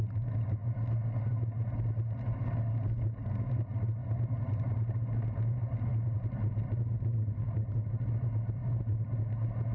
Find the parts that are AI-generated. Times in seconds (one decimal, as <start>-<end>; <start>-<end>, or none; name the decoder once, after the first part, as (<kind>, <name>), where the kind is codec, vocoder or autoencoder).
4.0-4.7 (vocoder, BigVGAN v2)